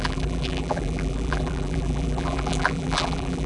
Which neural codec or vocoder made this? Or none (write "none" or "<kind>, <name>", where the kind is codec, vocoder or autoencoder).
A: vocoder, BigVGAN v2